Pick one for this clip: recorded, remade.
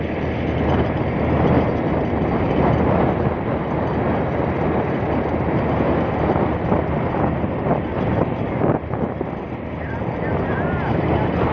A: recorded